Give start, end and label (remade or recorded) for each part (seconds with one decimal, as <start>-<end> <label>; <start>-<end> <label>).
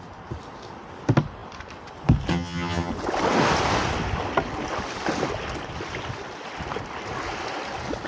0.0-2.3 recorded; 2.3-2.9 remade; 2.9-8.1 recorded